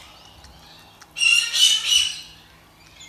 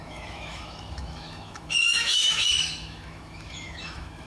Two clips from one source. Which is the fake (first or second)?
second